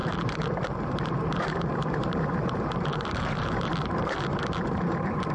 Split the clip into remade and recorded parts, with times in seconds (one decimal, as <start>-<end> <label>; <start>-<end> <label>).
0.0-5.3 remade